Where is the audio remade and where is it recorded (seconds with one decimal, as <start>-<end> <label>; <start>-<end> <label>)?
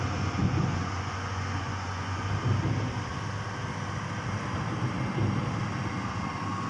0.0-0.4 recorded; 0.4-2.3 remade; 2.3-6.7 recorded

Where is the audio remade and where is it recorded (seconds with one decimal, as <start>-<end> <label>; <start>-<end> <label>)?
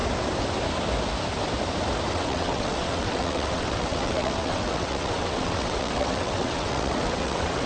0.0-2.1 recorded; 2.1-7.7 remade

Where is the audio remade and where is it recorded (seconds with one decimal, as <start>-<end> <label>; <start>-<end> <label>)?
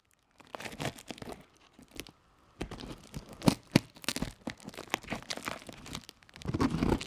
0.0-0.5 remade; 0.5-1.5 recorded; 1.5-4.1 remade; 4.1-7.1 recorded